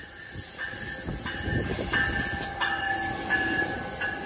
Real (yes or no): yes